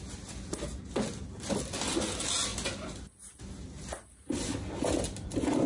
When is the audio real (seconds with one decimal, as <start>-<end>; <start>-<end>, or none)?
0.0-5.7